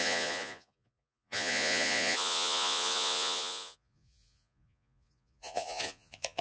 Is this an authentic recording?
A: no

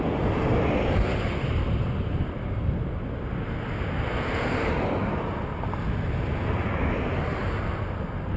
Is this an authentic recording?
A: yes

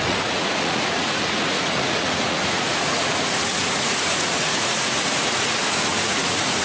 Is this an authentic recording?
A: no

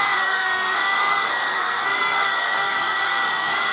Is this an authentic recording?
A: no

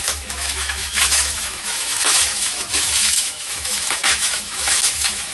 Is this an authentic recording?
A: no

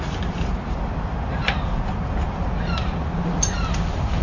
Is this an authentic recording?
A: yes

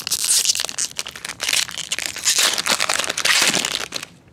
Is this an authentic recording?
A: yes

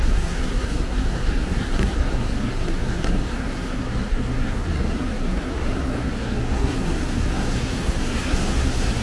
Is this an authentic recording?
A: no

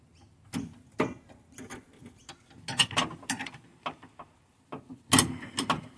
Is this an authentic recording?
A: yes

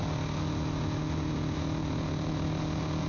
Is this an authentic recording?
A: yes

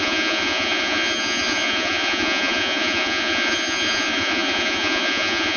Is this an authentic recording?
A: no